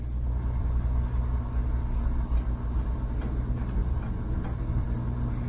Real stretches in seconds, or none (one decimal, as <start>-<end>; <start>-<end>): 0.0-3.8; 4.6-5.5